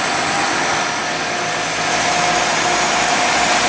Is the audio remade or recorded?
recorded